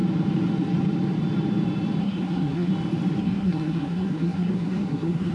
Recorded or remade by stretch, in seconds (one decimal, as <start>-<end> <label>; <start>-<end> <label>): 0.0-2.0 recorded; 2.0-2.7 remade; 2.7-3.2 recorded; 3.2-5.3 remade